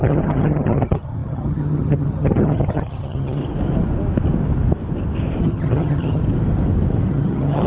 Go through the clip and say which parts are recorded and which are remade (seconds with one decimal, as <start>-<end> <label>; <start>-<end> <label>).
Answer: 0.0-3.4 remade; 3.4-5.4 recorded; 5.4-6.2 remade; 6.2-7.1 recorded; 7.1-7.7 remade